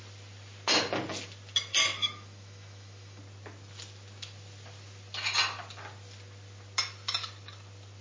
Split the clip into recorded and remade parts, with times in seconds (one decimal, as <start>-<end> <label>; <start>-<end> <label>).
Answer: 0.0-2.0 recorded; 2.0-3.2 remade; 3.2-8.0 recorded